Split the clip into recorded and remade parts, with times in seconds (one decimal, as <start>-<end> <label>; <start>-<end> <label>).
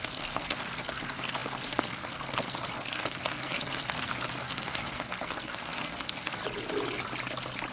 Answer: 0.0-6.4 remade; 6.4-7.7 recorded